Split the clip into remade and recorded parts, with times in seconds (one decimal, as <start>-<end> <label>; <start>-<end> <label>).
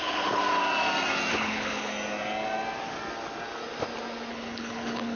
0.0-0.4 remade; 0.4-1.3 recorded; 1.3-1.9 remade; 1.9-4.3 recorded; 4.3-5.2 remade